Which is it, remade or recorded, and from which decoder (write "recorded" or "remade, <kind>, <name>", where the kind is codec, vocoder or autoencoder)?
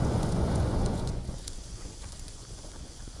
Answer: remade, vocoder, Vocos